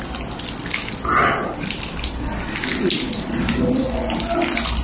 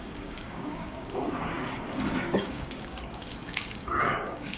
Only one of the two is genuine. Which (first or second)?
first